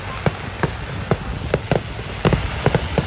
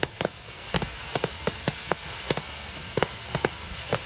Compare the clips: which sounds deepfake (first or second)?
second